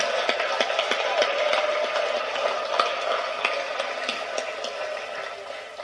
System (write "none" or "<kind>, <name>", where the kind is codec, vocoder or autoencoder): none